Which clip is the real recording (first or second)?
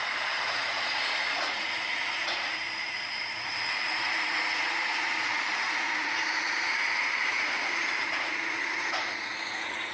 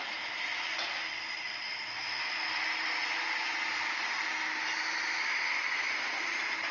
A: second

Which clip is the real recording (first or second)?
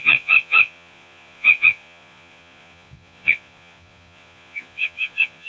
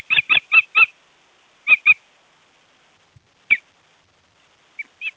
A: second